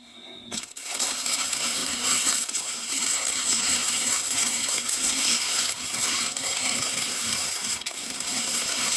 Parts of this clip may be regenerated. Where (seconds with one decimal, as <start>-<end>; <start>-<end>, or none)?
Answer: 0.0-9.0